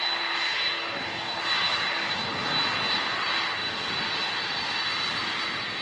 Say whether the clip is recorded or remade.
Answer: recorded